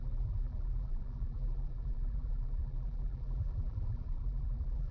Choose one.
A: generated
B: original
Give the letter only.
A